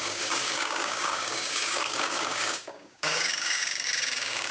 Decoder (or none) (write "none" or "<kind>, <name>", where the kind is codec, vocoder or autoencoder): codec, DAC